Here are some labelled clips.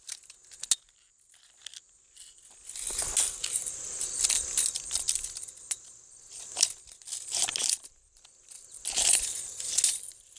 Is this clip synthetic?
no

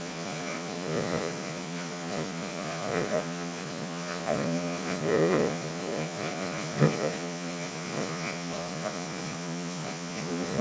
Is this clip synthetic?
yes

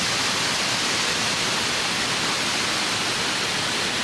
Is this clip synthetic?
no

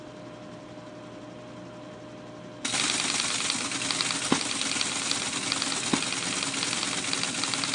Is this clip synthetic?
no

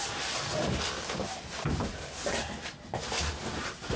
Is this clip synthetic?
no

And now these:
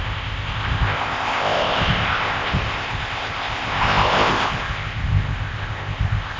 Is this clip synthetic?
yes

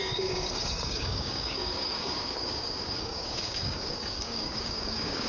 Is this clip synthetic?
yes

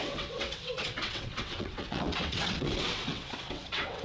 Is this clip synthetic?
yes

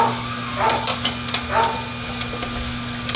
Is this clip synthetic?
no